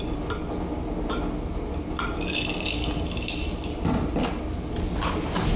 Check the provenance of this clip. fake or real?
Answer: real